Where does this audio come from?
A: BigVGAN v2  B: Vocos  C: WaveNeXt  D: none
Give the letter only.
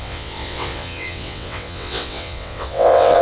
C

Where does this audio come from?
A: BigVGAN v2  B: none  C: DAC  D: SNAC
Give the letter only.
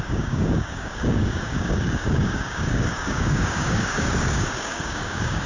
C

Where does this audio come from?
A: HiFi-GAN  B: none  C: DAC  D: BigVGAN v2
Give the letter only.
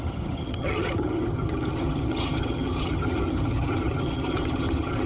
A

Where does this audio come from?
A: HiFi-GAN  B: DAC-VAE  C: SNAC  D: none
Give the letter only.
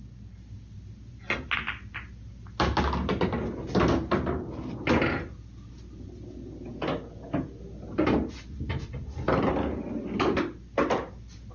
D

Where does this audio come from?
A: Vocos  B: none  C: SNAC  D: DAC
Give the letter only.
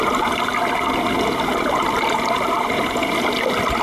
B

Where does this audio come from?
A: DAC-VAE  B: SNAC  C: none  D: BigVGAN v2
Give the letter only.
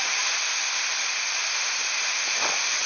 C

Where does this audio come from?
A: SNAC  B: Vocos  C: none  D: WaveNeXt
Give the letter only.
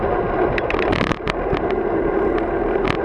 C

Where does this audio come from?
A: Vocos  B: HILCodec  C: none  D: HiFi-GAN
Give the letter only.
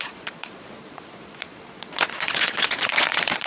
A